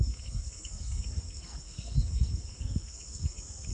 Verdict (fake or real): fake